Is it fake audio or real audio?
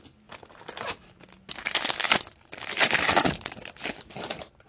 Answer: real